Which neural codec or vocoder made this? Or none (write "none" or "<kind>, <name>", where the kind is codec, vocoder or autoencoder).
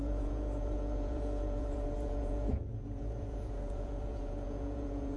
vocoder, Vocos